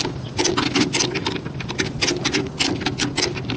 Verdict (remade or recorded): recorded